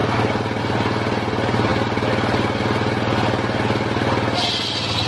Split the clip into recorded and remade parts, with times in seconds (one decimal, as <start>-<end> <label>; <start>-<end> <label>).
0.0-5.1 recorded